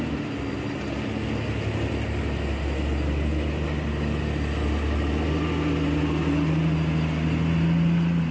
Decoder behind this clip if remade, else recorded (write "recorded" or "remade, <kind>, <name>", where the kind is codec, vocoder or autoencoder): recorded